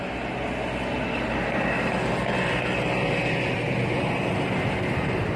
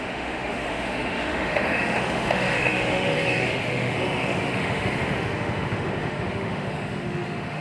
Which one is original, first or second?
first